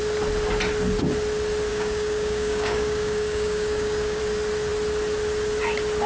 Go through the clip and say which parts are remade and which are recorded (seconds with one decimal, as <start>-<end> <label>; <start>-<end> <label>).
0.0-1.7 recorded; 1.7-4.2 remade; 4.2-6.1 recorded